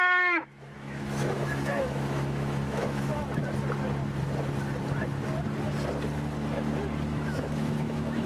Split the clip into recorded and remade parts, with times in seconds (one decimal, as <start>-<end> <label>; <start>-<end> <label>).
0.0-3.1 remade; 3.1-7.1 recorded; 7.1-8.3 remade